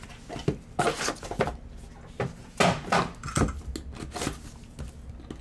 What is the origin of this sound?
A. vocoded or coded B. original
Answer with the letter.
B